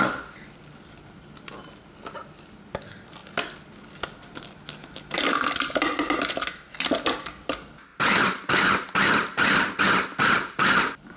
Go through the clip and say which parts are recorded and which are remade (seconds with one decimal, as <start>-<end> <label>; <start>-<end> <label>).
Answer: 0.0-11.2 recorded